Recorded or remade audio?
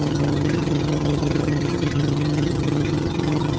remade